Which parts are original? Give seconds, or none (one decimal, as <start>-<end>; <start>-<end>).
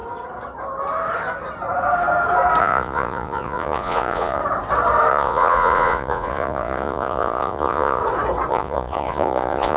0.0-2.6; 4.4-5.1; 8.0-8.5